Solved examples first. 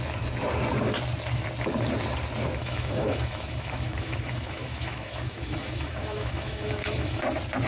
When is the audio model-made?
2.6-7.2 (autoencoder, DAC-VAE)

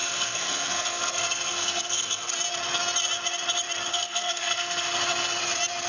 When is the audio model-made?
0.0-2.3 (codec, SNAC); 3.9-5.0